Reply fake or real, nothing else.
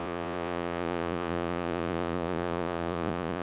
fake